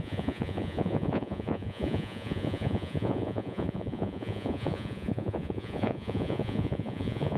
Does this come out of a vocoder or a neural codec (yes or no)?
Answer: yes